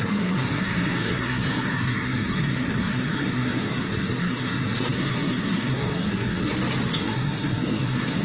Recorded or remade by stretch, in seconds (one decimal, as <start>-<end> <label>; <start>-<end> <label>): 0.0-6.4 remade; 6.4-6.9 recorded; 6.9-8.2 remade